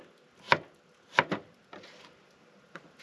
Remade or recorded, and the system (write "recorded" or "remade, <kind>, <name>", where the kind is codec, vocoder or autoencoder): recorded